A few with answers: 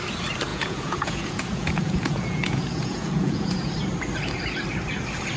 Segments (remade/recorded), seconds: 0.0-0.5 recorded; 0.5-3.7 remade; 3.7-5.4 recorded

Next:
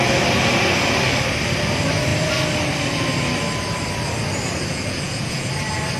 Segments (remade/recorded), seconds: 0.0-4.7 recorded; 4.7-5.5 remade; 5.5-6.0 recorded

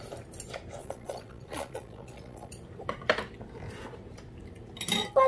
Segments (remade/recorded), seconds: 0.0-0.8 recorded; 0.8-2.5 remade; 2.5-5.3 recorded

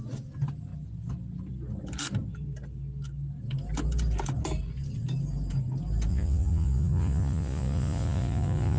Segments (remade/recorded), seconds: 0.0-6.1 recorded; 6.1-8.8 remade

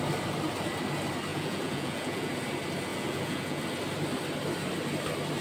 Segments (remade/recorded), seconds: 0.0-1.3 recorded; 1.3-2.3 remade; 2.3-2.9 recorded; 2.9-3.6 remade; 3.6-5.4 recorded

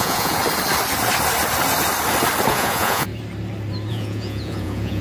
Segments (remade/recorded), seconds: 0.0-0.4 remade; 0.4-2.5 recorded; 2.5-3.1 remade; 3.1-3.9 recorded; 3.9-5.0 remade

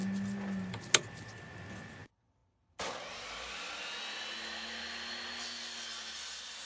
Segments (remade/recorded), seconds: 0.0-6.7 recorded

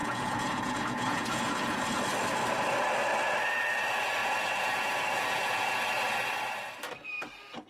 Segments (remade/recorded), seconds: 0.0-1.9 remade; 1.9-4.2 recorded; 4.2-5.8 remade; 5.8-7.7 recorded